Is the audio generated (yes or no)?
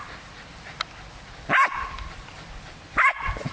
no